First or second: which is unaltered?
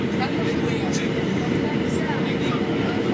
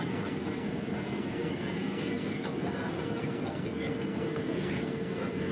first